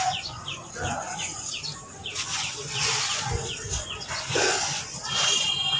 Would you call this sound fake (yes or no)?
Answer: yes